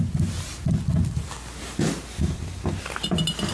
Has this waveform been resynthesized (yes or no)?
no